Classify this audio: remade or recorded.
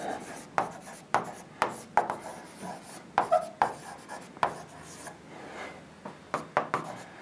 recorded